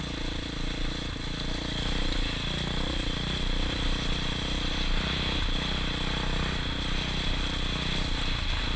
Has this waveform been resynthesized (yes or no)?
no